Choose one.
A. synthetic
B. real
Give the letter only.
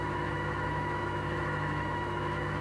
A